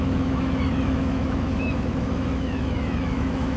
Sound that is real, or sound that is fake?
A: fake